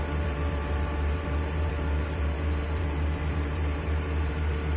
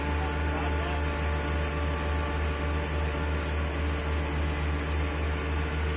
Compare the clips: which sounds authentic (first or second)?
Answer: second